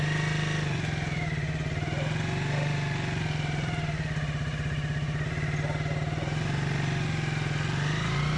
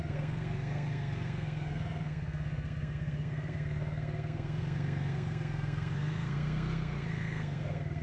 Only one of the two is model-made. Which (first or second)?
second